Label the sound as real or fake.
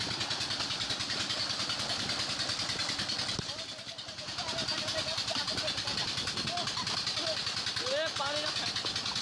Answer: real